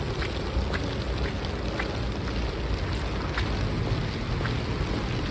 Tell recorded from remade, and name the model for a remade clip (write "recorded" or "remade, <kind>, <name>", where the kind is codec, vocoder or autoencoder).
recorded